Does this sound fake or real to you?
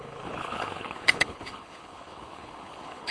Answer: fake